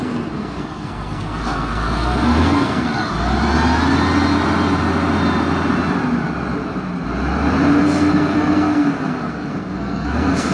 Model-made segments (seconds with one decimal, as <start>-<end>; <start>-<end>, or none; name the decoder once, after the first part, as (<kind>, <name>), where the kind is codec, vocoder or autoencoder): 0.0-3.1 (codec, SNAC); 7.8-10.5